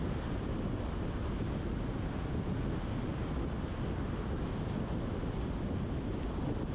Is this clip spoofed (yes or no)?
no